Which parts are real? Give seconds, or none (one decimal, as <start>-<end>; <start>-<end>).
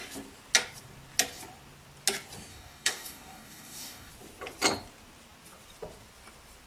0.0-2.5; 4.1-6.7